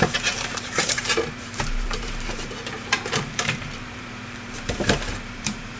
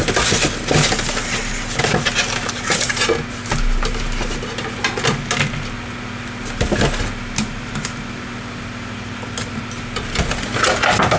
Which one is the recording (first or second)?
second